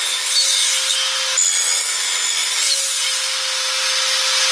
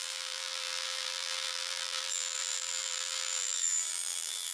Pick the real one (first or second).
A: first